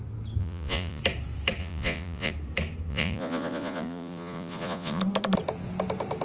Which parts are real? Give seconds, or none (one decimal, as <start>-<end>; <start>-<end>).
0.0-0.4; 1.0-1.6; 2.3-2.9; 5.0-6.2